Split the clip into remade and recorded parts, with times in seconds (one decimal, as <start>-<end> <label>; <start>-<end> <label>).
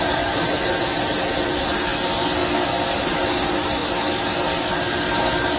0.0-5.6 recorded